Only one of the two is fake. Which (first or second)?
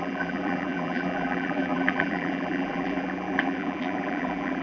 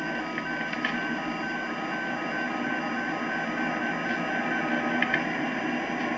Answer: first